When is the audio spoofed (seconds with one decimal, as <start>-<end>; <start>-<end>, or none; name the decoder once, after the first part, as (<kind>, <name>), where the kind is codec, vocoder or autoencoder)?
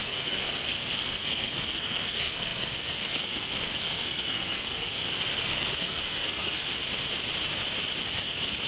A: 0.0-6.7 (codec, SNAC); 8.1-8.7